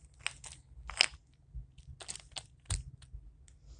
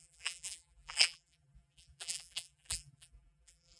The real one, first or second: first